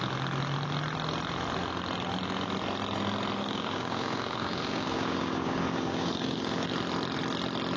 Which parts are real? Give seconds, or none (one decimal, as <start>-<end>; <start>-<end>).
0.0-3.4; 6.7-7.8